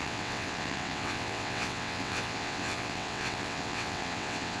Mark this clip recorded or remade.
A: remade